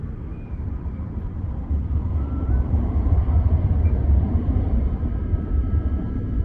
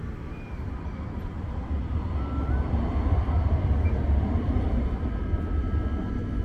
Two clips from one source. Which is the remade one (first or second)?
first